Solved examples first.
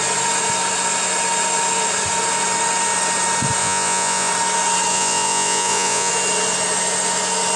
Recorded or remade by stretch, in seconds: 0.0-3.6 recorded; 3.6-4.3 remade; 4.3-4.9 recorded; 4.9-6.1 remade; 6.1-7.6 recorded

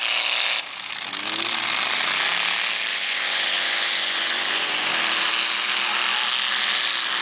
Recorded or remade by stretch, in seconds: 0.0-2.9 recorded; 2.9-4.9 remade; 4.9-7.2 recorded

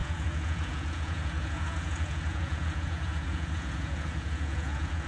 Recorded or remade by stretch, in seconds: 0.0-5.1 remade

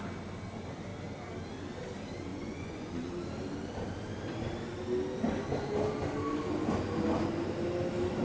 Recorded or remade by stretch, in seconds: 0.0-2.3 recorded; 2.3-3.1 remade; 3.1-8.2 recorded